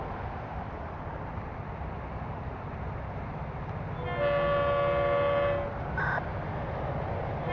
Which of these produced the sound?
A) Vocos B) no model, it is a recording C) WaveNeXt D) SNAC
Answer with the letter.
B